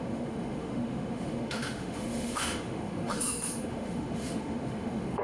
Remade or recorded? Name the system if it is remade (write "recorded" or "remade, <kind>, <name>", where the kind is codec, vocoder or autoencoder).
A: remade, autoencoder, DAC-VAE